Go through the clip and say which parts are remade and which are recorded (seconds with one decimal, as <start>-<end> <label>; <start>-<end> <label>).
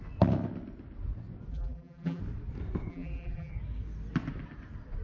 0.0-1.5 recorded; 1.5-2.2 remade; 2.2-2.9 recorded; 2.9-3.5 remade; 3.5-5.0 recorded